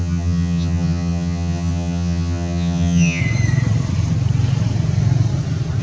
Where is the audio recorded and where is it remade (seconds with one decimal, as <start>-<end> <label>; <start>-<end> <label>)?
0.0-3.2 remade; 3.2-5.8 recorded